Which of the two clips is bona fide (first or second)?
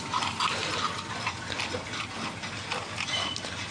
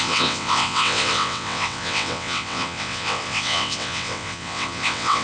first